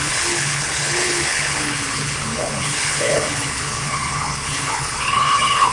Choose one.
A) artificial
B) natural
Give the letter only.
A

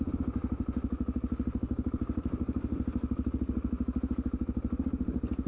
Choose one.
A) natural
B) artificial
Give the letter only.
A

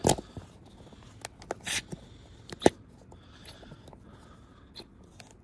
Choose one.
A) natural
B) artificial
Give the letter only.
A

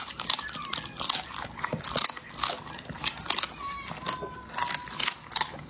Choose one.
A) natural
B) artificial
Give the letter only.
A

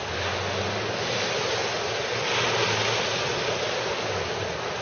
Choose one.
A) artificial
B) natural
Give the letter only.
B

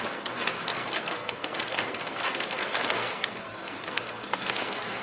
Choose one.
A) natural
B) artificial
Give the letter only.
B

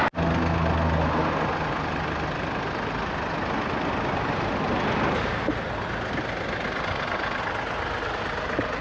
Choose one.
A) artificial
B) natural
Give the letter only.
B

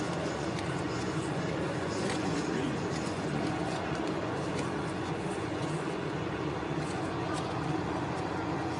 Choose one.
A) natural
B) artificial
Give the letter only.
B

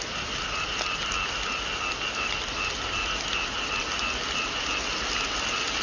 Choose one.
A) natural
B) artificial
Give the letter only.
A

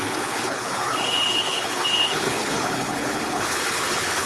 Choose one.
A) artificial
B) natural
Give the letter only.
A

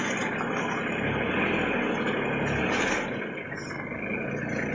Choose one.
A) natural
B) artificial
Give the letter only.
A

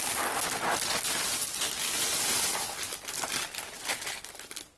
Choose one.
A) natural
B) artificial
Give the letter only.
A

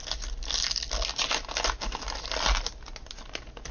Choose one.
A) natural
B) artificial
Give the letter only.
A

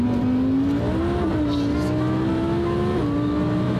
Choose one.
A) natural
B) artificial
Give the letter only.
A